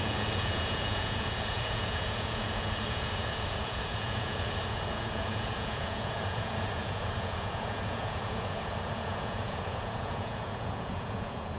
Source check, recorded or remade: remade